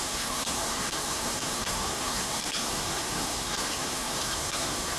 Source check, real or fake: fake